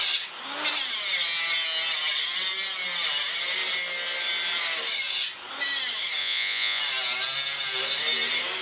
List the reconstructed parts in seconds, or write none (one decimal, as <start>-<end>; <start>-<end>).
6.2-6.8